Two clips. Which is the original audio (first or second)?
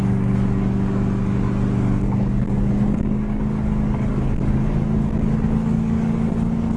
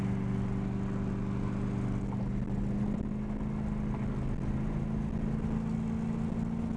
second